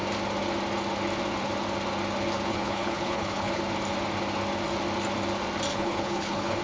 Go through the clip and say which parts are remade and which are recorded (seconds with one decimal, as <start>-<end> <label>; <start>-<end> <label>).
0.0-2.5 recorded; 2.5-3.6 remade; 3.6-5.7 recorded; 5.7-6.6 remade